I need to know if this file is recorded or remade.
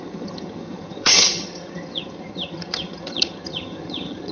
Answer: remade